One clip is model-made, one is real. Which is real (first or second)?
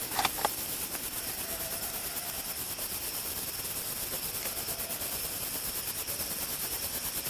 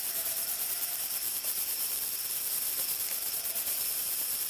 first